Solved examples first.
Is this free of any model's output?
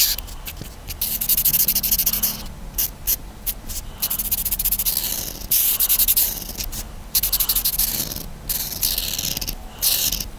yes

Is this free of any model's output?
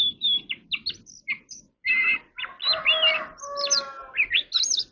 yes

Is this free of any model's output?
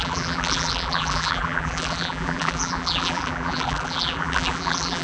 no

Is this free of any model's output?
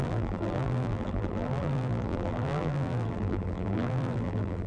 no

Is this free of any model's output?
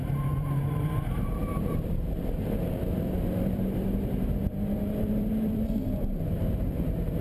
no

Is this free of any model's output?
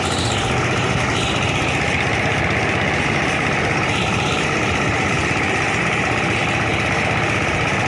yes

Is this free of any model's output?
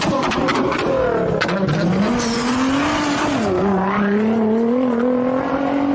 yes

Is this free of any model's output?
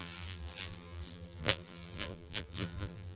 no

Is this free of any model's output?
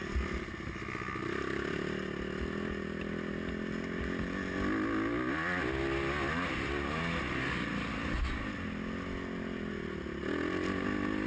yes